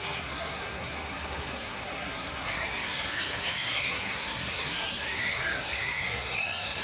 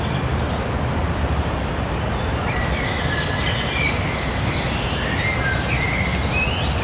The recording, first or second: second